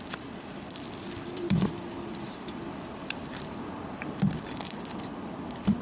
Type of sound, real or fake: fake